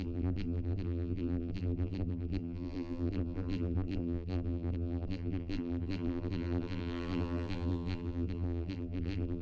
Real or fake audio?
fake